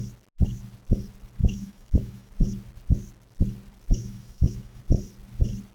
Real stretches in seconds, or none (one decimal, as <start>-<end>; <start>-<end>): 0.0-1.4; 2.3-4.0; 4.8-5.7